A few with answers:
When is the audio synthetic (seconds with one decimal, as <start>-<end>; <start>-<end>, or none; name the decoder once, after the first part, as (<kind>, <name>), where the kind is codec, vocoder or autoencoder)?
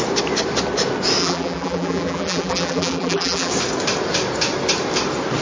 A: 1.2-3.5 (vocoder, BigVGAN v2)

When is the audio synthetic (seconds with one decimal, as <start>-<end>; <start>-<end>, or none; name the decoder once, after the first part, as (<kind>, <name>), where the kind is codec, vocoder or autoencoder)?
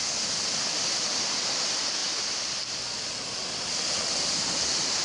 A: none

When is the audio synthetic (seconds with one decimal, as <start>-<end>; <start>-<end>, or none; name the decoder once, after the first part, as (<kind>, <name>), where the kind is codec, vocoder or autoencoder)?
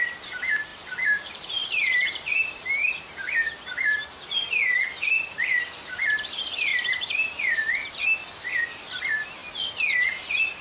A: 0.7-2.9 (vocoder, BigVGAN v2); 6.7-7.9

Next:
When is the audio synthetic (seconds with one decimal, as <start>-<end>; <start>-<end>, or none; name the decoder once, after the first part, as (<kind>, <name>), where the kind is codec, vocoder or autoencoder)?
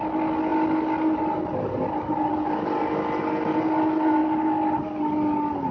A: none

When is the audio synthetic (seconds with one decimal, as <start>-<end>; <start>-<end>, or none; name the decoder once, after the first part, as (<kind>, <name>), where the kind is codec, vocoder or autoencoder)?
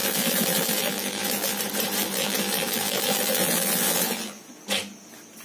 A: 0.0-1.6 (vocoder, BigVGAN v2); 2.0-4.4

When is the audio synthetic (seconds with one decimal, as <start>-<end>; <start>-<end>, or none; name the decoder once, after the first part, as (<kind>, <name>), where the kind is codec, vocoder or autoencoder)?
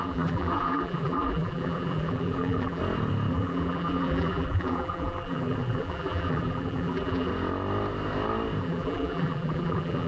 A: 0.0-2.8 (vocoder, BigVGAN v2); 3.3-7.3; 8.6-10.1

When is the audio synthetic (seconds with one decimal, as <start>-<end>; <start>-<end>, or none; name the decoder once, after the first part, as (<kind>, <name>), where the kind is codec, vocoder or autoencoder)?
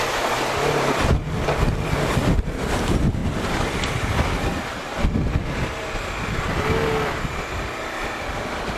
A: 3.2-4.4 (vocoder, BigVGAN v2)